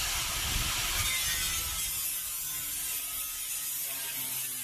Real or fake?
real